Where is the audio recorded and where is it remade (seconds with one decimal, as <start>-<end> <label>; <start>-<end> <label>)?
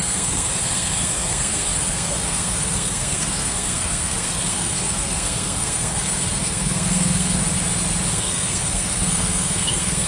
0.0-7.4 remade; 7.4-8.1 recorded; 8.1-10.1 remade